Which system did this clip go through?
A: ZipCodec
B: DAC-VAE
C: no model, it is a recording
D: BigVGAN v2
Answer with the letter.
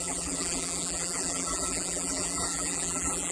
D